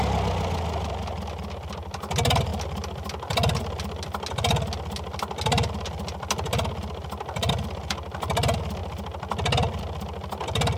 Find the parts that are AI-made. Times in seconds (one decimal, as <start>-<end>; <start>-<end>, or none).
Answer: none